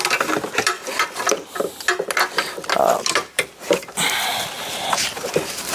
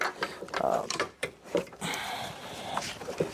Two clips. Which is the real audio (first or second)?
first